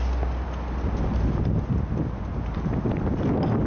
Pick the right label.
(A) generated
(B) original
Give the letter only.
B